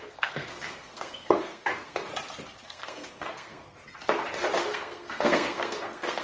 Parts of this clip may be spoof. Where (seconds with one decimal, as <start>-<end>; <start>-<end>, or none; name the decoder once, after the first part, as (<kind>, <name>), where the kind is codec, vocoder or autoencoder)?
0.0-2.1 (codec, SNAC); 2.6-3.8; 4.6-6.2